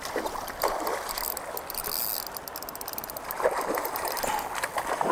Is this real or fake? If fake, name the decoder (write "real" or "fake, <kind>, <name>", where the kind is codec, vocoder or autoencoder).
real